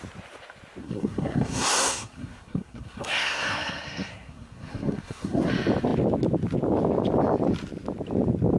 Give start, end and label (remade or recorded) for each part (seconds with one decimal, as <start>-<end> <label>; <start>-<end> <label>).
0.0-0.8 recorded; 0.8-5.5 remade; 5.5-8.6 recorded